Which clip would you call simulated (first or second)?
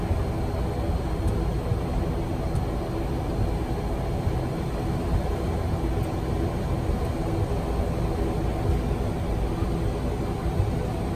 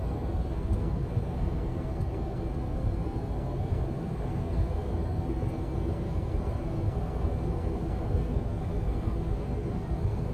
second